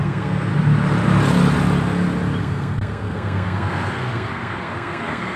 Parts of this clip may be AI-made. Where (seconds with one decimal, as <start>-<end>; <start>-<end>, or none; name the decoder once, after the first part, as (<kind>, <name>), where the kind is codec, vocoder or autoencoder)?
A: 0.0-0.5 (codec, SNAC); 2.4-5.4